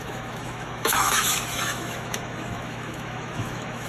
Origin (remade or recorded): remade